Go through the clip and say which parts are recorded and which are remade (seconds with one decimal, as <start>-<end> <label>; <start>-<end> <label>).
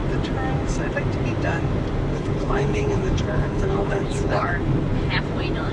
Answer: 0.0-2.1 recorded; 2.1-4.5 remade; 4.5-5.7 recorded